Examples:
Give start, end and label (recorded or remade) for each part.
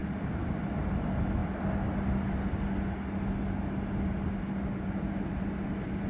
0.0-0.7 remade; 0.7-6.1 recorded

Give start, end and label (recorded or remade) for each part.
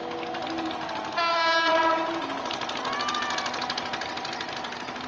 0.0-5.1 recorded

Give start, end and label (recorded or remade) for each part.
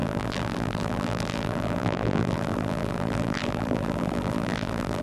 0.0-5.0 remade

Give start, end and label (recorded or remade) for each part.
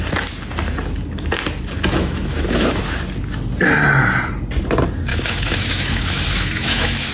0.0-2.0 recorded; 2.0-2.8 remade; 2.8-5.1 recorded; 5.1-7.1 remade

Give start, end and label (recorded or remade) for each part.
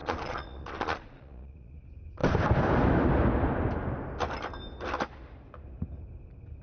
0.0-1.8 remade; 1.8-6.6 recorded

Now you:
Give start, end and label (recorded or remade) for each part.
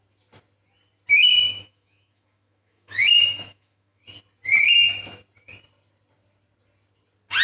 0.0-1.2 recorded; 1.2-4.0 remade; 4.0-7.4 recorded